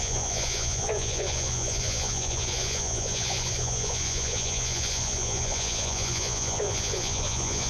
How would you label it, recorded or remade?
remade